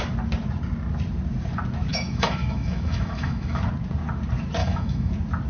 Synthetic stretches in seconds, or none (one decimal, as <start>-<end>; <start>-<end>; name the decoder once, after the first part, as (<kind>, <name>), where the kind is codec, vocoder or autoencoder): 1.9-3.6 (autoencoder, DAC-VAE); 4.6-5.1